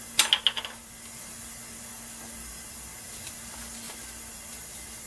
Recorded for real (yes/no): yes